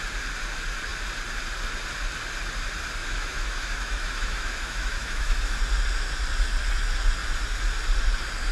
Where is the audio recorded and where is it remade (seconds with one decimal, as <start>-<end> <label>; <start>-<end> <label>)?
0.0-3.0 recorded; 3.0-5.6 remade; 5.6-8.5 recorded